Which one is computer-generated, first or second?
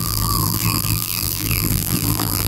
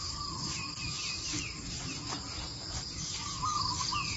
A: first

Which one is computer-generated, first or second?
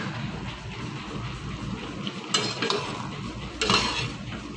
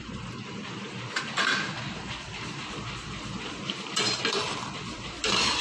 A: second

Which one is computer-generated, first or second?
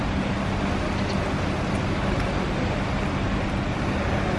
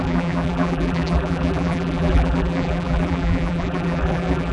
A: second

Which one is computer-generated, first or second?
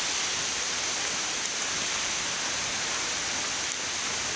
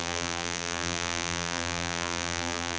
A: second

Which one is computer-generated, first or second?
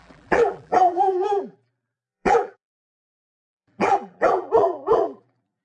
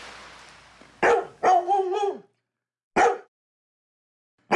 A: first